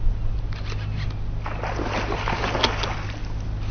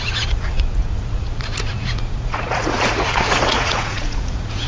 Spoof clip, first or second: second